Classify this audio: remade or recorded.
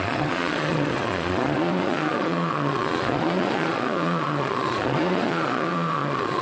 remade